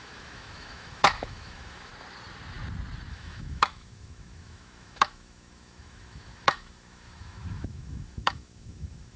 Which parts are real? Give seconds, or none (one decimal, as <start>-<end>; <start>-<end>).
1.9-3.1